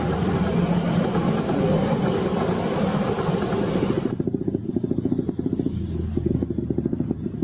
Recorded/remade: recorded